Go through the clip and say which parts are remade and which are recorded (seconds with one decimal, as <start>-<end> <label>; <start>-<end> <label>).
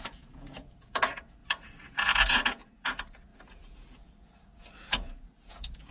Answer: 0.0-5.9 remade